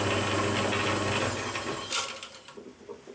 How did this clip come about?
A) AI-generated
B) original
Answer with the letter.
B